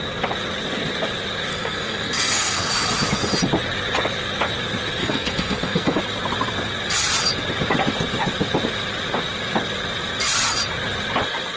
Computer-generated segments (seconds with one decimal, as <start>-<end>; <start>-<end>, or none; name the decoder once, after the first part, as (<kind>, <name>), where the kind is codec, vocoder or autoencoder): 1.5-2.7 (codec, SNAC); 5.0-6.0